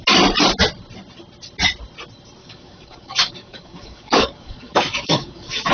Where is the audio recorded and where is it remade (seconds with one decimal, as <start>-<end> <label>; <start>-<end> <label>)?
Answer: 0.0-2.4 recorded; 2.4-5.7 remade